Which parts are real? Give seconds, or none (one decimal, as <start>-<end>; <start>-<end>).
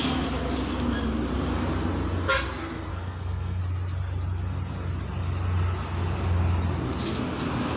0.0-2.9; 3.6-7.8